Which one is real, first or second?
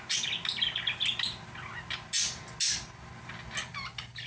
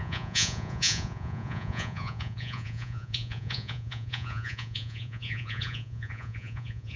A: first